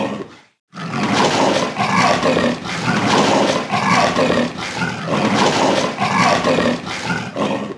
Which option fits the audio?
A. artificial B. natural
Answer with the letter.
B